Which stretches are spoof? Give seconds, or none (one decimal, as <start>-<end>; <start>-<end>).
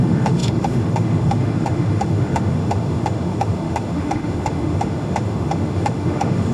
0.0-6.5